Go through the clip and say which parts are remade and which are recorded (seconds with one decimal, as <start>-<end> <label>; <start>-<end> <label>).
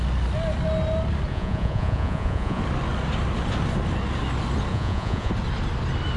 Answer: 0.0-1.3 recorded; 1.3-2.6 remade; 2.6-4.7 recorded; 4.7-5.3 remade; 5.3-6.2 recorded